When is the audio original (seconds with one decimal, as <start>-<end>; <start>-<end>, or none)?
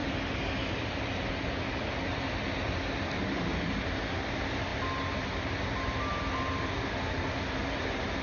0.0-8.2